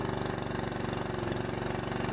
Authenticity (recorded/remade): recorded